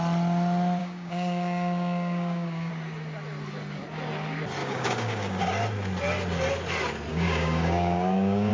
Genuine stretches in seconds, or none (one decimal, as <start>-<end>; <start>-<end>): 0.0-0.8; 2.7-4.6; 5.4-7.1